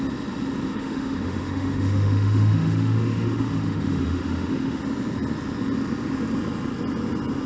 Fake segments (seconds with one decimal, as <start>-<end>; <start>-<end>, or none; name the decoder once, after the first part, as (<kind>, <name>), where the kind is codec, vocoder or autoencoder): 0.7-4.8 (autoencoder, DAC-VAE)